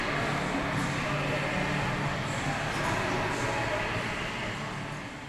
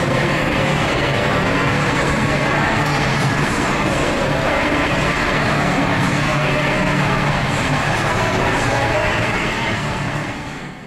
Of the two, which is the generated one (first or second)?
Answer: second